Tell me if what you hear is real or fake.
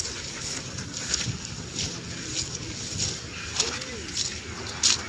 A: real